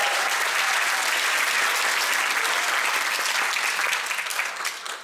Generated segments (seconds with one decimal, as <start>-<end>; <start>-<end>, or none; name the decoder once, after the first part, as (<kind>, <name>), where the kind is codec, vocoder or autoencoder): none